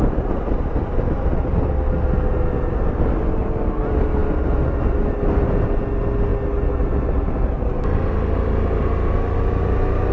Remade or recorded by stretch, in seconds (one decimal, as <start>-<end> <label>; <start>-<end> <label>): 0.0-10.1 recorded